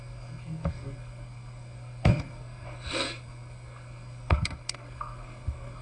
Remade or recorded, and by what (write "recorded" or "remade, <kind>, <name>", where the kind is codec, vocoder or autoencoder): remade, codec, SNAC